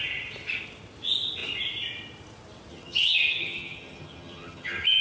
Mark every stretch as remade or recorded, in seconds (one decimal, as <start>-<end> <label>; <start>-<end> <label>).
0.0-2.7 recorded; 2.7-5.0 remade